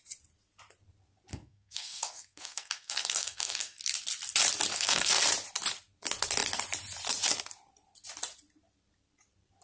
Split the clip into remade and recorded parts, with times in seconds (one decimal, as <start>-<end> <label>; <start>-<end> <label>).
0.0-1.3 recorded; 1.3-3.8 remade; 3.8-4.7 recorded; 4.7-5.2 remade; 5.2-9.6 recorded